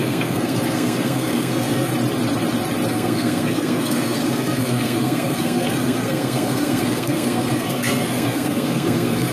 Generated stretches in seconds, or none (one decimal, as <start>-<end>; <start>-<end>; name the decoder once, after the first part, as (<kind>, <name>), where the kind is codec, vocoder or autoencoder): 0.0-1.9 (codec, SNAC); 2.9-9.3